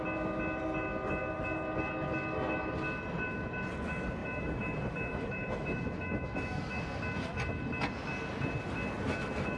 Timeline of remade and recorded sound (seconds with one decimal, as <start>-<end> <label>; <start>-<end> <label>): 0.0-4.2 recorded; 4.2-6.8 remade; 6.8-9.6 recorded